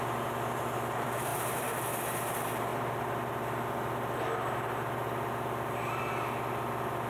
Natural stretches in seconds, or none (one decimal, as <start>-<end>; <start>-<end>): 0.0-7.1